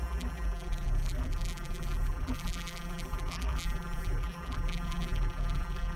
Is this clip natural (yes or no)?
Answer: no